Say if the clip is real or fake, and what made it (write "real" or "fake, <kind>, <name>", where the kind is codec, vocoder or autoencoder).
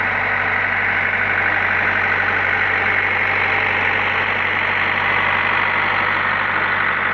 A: real